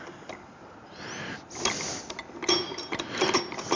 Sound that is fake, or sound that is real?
real